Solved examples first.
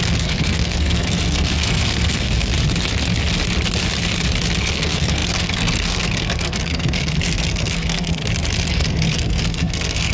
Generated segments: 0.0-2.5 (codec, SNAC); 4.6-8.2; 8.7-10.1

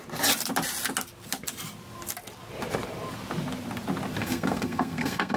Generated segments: 4.2-5.4 (codec, SNAC)

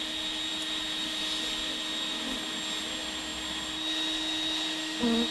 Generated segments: none

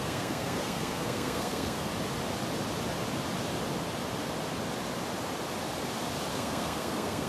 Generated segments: 0.0-1.9 (codec, SNAC); 6.3-7.3